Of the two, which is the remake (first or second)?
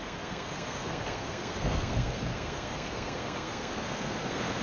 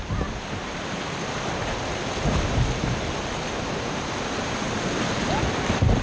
first